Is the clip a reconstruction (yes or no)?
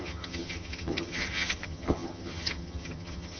yes